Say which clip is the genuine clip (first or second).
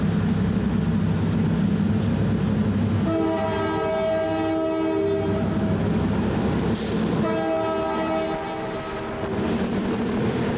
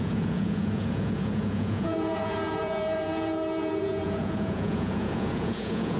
first